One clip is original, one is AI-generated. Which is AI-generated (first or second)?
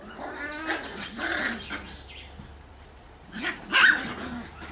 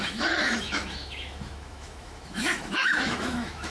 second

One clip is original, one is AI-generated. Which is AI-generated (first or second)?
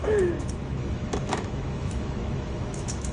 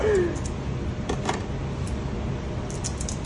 first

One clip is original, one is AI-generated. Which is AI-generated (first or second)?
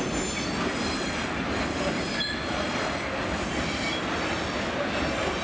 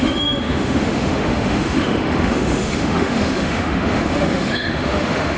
second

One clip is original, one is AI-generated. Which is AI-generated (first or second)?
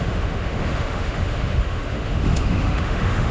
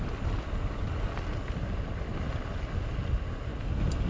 first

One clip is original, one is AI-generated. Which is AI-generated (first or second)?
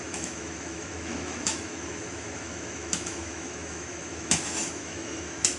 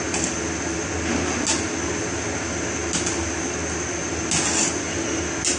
first